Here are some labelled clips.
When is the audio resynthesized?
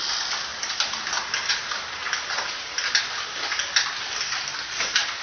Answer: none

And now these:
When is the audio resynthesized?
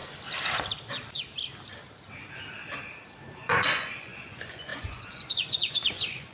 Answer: 3.4-6.3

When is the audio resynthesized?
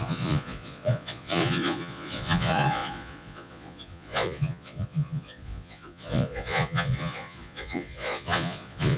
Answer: 0.0-9.0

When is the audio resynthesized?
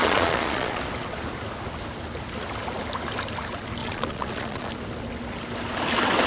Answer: 0.0-0.8; 3.8-4.7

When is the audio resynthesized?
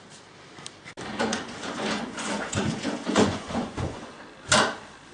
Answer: 1.1-4.2